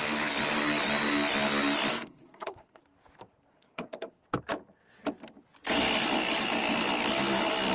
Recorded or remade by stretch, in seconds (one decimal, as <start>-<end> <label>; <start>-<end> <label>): 0.0-1.9 recorded; 1.9-2.8 remade; 2.8-3.5 recorded; 3.5-4.2 remade; 4.2-7.7 recorded